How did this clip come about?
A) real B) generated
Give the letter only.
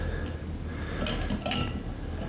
A